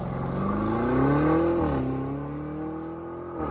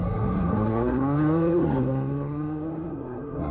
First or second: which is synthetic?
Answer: second